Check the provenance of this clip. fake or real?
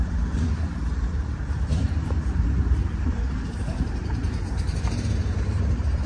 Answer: fake